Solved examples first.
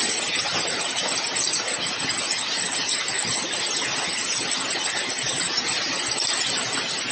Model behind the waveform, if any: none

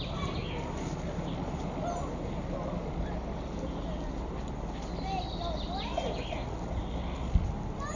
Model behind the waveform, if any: none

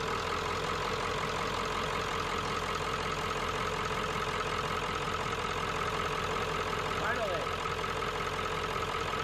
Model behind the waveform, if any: none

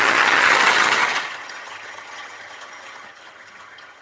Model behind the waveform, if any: vocoder, HiFi-GAN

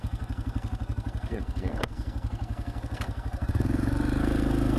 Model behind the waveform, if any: codec, SNAC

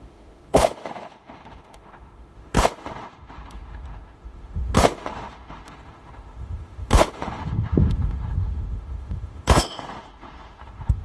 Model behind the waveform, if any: autoencoder, DAC-VAE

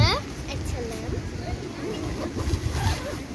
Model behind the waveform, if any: none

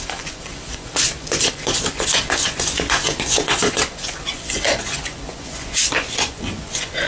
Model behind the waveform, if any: vocoder, Vocos